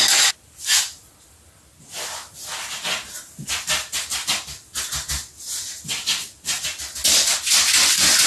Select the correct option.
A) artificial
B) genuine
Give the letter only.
B